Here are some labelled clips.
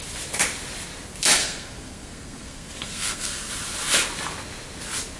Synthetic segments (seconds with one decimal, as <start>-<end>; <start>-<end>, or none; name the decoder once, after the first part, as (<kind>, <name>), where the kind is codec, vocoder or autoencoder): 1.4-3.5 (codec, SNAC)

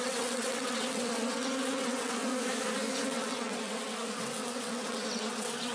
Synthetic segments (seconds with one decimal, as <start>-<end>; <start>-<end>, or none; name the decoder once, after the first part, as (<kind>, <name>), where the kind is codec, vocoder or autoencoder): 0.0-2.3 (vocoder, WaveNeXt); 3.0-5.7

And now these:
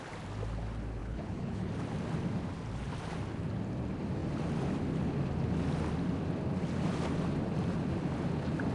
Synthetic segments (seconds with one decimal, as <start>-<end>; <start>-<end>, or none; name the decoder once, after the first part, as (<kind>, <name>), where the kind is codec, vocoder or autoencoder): 1.0-1.7 (codec, HILCodec)

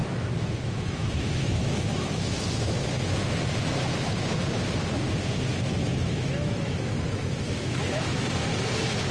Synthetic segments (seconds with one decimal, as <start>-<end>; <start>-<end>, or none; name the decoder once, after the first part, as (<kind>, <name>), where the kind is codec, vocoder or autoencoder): 0.0-2.2 (autoencoder, DAC-VAE); 5.8-8.3

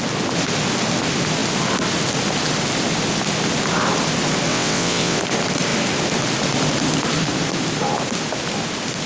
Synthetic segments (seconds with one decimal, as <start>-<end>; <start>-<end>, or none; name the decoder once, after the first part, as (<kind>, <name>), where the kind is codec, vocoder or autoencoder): 4.5-5.2 (vocoder, WaveNeXt)

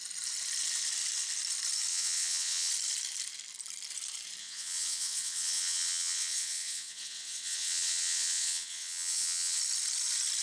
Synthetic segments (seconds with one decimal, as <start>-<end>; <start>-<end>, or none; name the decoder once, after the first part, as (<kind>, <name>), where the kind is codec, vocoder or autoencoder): 1.9-2.7 (vocoder, WaveNeXt); 4.4-9.6

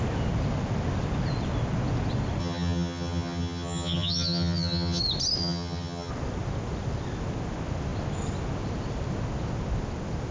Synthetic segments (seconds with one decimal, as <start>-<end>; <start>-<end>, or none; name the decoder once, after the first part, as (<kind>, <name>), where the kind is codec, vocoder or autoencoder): 2.4-5.0 (vocoder, HiFi-GAN); 5.4-6.1

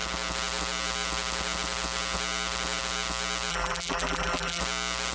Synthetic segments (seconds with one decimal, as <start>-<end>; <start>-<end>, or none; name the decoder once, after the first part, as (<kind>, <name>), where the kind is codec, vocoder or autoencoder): 3.5-4.6 (vocoder, BigVGAN v2)